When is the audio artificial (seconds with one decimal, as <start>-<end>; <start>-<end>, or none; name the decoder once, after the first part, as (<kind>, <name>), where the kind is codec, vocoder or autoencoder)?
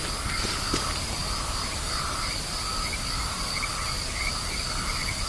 none